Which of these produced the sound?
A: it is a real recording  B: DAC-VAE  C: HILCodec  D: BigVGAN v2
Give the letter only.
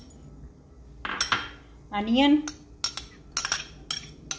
A